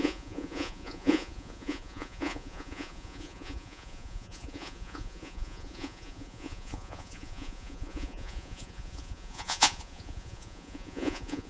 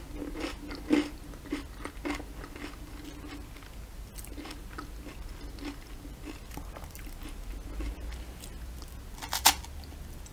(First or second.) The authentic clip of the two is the second